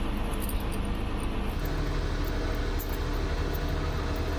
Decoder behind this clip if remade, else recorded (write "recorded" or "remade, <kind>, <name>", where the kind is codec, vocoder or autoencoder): recorded